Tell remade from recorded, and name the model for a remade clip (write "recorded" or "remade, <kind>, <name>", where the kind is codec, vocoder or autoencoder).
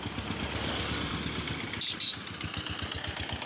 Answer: recorded